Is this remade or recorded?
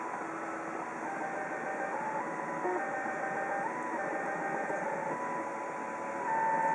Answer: recorded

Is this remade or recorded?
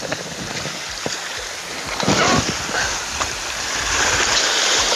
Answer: recorded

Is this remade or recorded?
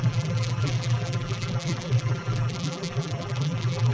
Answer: remade